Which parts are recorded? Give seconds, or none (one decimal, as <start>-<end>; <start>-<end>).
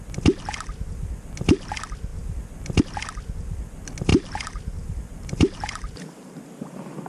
0.0-4.1; 6.4-7.1